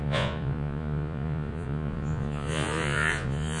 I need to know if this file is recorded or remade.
remade